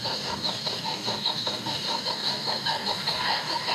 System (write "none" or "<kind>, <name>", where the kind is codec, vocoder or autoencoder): codec, DAC